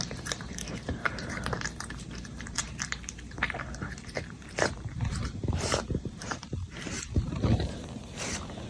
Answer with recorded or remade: remade